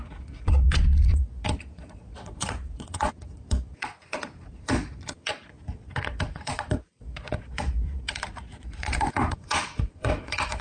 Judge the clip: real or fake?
fake